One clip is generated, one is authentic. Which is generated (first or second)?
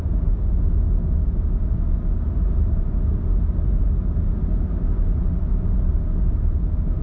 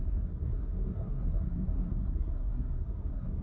second